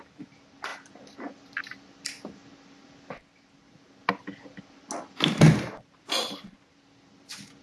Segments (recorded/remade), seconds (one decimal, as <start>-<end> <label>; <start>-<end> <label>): 0.0-7.6 recorded